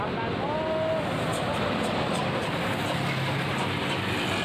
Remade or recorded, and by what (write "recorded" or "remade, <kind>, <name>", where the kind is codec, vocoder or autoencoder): recorded